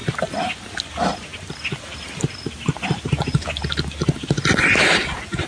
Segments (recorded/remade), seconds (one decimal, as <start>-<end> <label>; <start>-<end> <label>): 0.0-5.5 recorded